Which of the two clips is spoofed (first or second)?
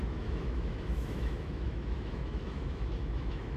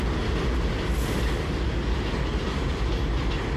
first